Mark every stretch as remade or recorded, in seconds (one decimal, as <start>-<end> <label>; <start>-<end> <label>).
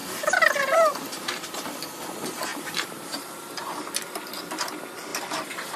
0.0-1.8 remade; 1.8-2.5 recorded; 2.5-3.3 remade; 3.3-5.8 recorded